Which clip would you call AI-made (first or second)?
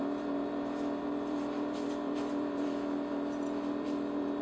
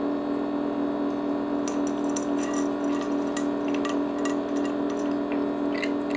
first